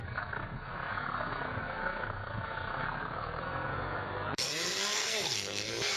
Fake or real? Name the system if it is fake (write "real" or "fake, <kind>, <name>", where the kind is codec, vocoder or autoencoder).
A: fake, codec, SNAC